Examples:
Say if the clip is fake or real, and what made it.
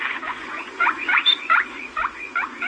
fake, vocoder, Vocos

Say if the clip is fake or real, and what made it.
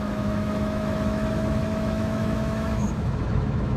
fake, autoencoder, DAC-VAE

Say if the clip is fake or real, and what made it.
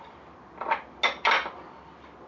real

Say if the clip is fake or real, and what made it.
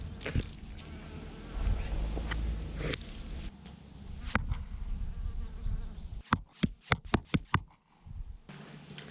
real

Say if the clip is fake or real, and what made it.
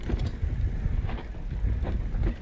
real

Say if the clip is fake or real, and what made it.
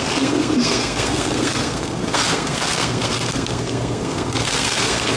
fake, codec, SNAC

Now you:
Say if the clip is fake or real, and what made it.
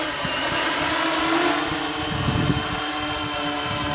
real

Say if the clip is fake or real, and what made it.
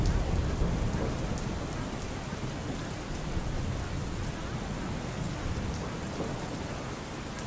real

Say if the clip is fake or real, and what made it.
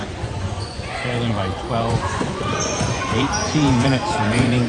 fake, vocoder, Vocos